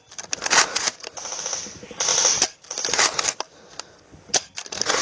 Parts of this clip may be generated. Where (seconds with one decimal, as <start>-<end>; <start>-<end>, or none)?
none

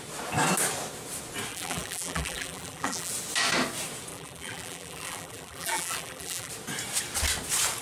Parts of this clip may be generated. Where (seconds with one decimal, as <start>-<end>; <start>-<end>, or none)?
1.5-3.1; 4.1-6.5

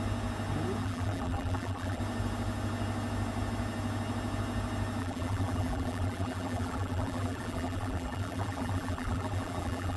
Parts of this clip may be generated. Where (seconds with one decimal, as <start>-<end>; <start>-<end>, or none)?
0.8-2.0; 5.0-10.0